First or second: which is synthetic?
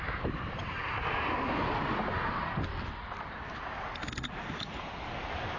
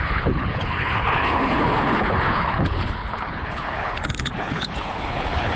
second